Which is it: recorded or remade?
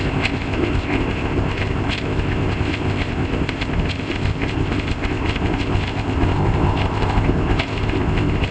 remade